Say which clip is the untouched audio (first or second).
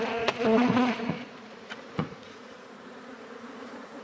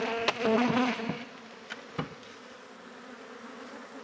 second